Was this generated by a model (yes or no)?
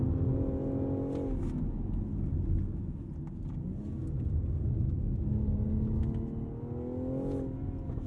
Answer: no